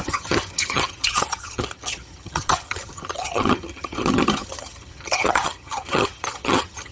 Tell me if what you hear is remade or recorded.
remade